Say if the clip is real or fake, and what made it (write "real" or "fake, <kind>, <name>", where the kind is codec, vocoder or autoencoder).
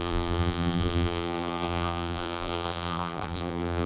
fake, vocoder, BigVGAN v2